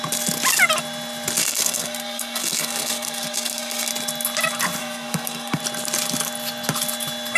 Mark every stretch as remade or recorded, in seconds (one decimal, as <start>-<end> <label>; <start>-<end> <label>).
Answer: 0.0-1.4 recorded; 1.4-3.9 remade; 3.9-4.8 recorded; 4.8-5.6 remade; 5.6-7.4 recorded